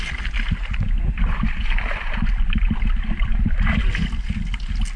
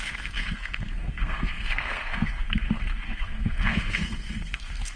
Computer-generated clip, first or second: second